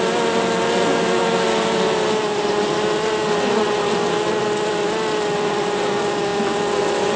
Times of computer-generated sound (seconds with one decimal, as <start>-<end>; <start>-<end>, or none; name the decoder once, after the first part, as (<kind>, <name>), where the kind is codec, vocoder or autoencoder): none